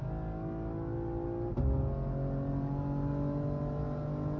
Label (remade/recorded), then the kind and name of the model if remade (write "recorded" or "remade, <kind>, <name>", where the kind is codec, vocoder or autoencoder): recorded